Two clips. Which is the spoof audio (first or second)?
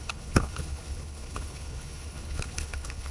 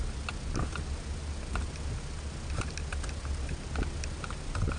first